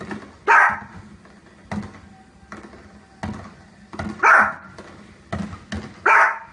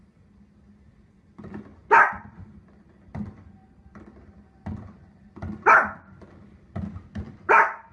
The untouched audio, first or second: first